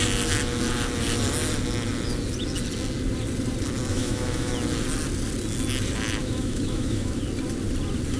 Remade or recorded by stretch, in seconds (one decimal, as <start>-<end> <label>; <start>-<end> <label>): 0.0-3.9 recorded; 3.9-4.5 remade; 4.5-6.2 recorded; 6.2-7.2 remade; 7.2-8.2 recorded